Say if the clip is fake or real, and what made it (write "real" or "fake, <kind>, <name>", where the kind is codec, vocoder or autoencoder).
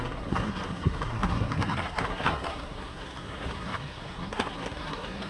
fake, codec, SNAC